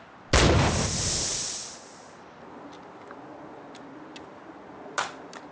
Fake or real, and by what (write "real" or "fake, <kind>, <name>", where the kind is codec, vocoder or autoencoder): real